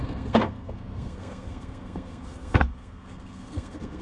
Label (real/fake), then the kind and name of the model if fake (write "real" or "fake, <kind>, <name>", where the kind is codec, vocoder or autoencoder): fake, codec, SNAC